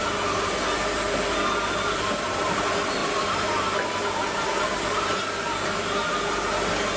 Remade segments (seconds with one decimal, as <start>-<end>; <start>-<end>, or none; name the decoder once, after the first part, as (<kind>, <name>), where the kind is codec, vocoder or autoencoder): none